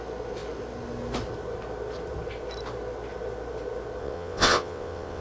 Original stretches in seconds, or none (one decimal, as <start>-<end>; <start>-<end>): 0.0-4.0